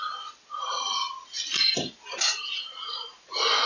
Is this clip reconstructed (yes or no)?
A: no